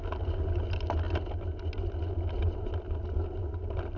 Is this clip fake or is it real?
real